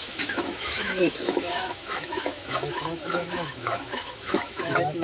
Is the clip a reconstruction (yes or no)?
yes